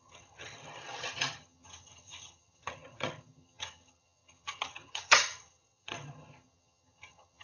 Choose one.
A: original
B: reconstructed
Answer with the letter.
B